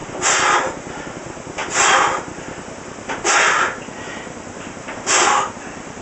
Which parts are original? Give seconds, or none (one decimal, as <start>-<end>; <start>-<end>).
0.0-6.0